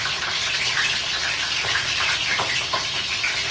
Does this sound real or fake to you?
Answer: real